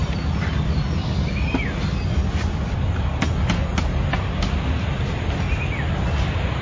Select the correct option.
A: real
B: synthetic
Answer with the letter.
A